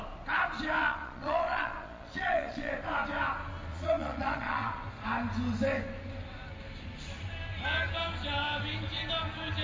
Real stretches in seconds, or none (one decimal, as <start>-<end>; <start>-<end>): 0.0-0.8; 2.7-3.7; 4.8-9.6